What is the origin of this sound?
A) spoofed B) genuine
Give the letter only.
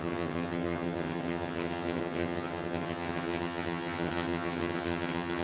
A